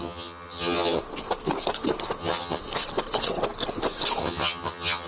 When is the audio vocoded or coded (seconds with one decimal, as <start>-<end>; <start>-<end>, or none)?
0.0-1.0; 2.2-2.6; 4.2-5.1